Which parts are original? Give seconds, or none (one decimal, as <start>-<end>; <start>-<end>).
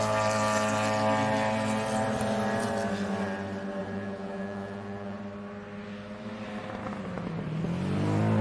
0.0-3.8; 5.2-8.4